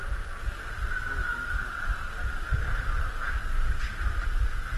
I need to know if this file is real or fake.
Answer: real